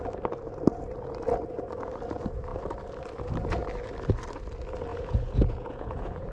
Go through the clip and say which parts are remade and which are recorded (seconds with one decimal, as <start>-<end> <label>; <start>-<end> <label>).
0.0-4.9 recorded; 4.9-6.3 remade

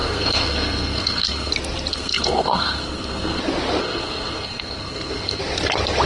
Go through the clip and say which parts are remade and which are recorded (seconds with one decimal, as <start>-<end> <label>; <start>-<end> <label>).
0.0-1.5 remade; 1.5-1.9 recorded; 1.9-3.4 remade; 3.4-3.8 recorded; 3.8-5.4 remade; 5.4-6.1 recorded

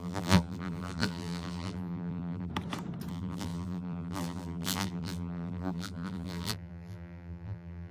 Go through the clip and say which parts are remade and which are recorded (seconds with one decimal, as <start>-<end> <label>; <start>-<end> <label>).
0.0-2.5 remade; 2.5-3.1 recorded; 3.1-7.9 remade

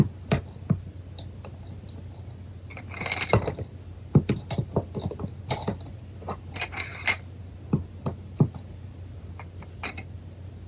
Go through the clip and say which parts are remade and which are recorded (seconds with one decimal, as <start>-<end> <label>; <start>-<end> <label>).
0.0-10.7 recorded

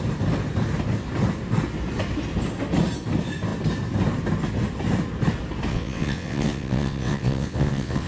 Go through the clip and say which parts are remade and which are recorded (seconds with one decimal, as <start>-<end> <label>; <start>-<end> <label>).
0.0-5.7 recorded; 5.7-8.1 remade

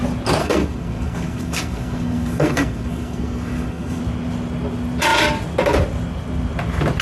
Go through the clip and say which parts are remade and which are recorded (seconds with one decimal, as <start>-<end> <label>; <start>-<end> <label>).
0.0-0.4 recorded; 0.4-4.0 remade; 4.0-7.0 recorded

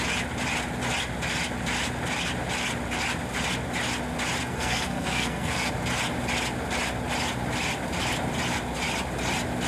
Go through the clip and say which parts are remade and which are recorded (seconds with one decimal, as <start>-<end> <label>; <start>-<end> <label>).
0.0-4.4 recorded; 4.4-5.7 remade; 5.7-9.7 recorded

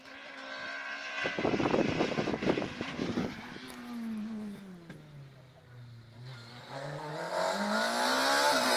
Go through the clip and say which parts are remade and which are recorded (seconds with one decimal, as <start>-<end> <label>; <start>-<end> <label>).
0.0-6.5 recorded; 6.5-7.1 remade; 7.1-8.8 recorded